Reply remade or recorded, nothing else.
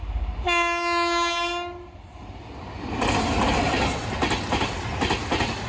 recorded